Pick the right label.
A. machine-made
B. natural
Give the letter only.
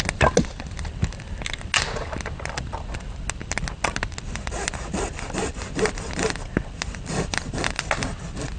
B